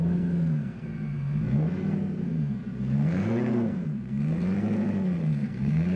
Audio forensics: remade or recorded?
remade